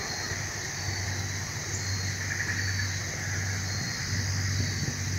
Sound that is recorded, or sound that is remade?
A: recorded